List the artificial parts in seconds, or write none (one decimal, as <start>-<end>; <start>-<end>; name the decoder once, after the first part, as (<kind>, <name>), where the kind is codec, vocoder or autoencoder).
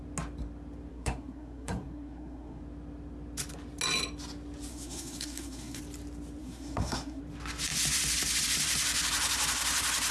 0.9-2.6 (codec, SNAC); 4.7-5.8; 6.4-7.2